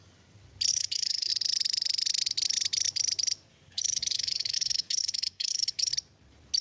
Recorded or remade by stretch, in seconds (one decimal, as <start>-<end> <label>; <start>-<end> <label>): 0.0-0.7 recorded; 0.7-1.3 remade; 1.3-3.5 recorded; 3.5-5.9 remade; 5.9-6.6 recorded